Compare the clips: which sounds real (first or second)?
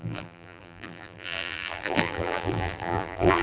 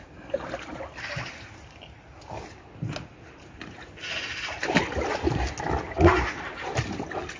second